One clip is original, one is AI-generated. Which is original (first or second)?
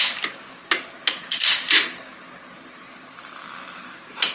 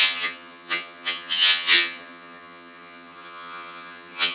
first